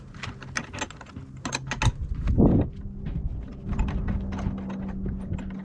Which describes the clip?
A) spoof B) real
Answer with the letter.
B